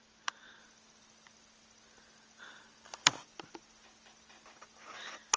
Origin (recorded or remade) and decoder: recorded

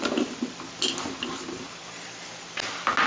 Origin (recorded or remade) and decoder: recorded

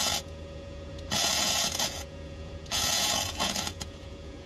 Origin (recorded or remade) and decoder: remade, vocoder, Vocos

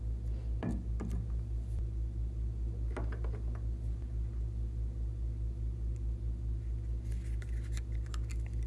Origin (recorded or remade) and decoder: recorded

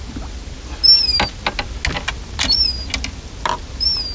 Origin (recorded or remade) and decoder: recorded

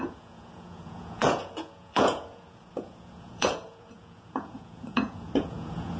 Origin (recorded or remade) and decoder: remade, vocoder, Vocos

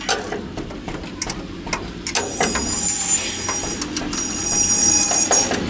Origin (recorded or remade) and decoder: recorded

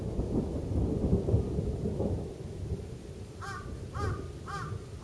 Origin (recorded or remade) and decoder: recorded